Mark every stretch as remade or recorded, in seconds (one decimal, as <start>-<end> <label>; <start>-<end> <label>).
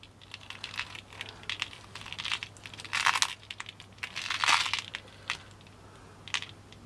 0.0-6.9 recorded